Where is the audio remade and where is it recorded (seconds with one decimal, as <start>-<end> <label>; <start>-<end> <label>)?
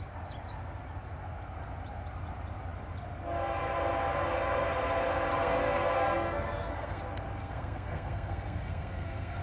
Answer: 0.0-5.4 recorded; 5.4-7.0 remade; 7.0-7.4 recorded; 7.4-9.4 remade